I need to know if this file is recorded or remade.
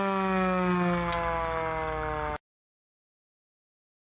recorded